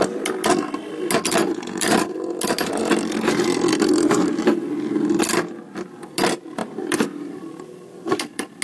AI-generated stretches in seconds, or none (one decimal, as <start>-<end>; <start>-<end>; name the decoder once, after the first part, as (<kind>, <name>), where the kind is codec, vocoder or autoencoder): 6.6-8.6 (vocoder, BigVGAN v2)